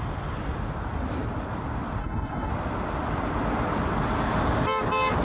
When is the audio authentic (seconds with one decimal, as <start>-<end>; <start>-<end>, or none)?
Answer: 0.0-2.0; 2.5-5.2